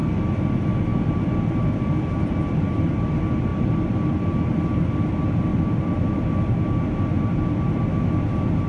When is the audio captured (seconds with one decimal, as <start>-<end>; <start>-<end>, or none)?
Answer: 0.0-3.5; 4.1-5.5; 6.2-8.7